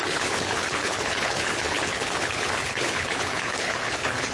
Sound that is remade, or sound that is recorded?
remade